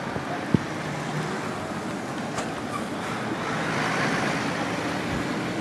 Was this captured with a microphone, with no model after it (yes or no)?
yes